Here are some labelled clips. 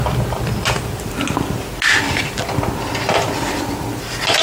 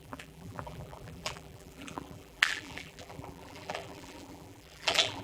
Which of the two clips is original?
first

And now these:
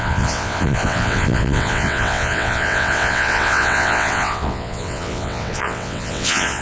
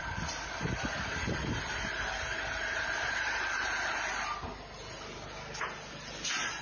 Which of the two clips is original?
second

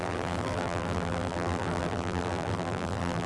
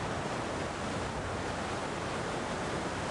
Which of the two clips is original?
second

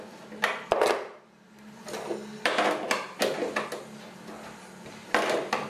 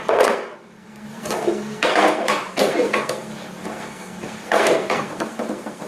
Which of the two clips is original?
first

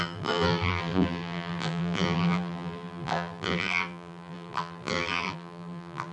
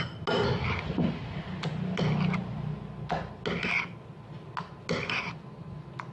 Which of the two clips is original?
second